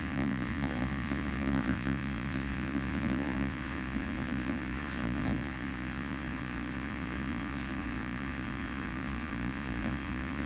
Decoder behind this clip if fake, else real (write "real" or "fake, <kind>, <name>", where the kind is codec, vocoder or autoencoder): fake, vocoder, Vocos